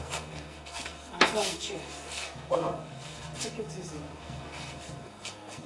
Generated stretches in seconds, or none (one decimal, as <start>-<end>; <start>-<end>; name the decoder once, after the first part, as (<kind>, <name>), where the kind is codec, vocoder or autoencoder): 0.0-5.7 (codec, SNAC)